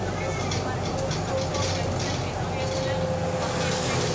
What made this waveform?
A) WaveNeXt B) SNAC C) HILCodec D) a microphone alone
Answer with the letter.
D